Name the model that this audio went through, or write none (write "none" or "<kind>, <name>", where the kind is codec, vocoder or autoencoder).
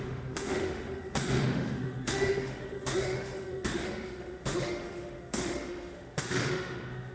autoencoder, DAC-VAE